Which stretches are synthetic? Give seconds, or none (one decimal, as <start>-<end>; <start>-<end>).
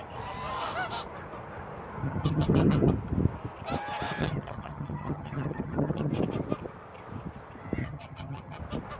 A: 2.0-2.9; 4.2-6.1; 7.8-8.6